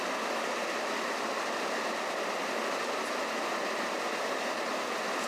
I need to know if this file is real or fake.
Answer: real